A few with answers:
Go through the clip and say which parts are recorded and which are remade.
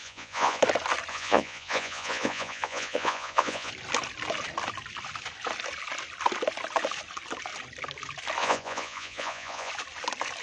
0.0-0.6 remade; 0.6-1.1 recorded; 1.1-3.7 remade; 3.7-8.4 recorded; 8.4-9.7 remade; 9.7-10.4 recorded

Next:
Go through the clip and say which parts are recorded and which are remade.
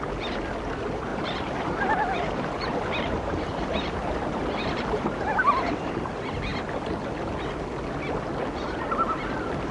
0.0-1.1 recorded; 1.1-6.1 remade; 6.1-9.7 recorded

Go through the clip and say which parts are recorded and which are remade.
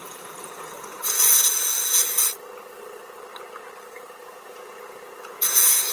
0.0-2.0 remade; 2.0-4.2 recorded; 4.2-5.9 remade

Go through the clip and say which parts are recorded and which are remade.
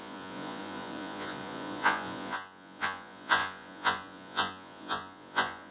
0.0-5.7 remade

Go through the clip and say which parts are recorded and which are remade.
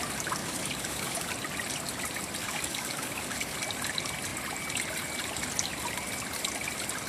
0.0-0.4 recorded; 0.4-1.3 remade; 1.3-2.4 recorded; 2.4-3.5 remade; 3.5-7.1 recorded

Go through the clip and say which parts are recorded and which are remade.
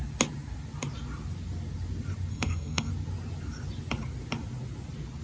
0.0-2.3 recorded; 2.3-2.9 remade; 2.9-5.2 recorded